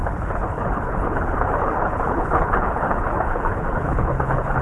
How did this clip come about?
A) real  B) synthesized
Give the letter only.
B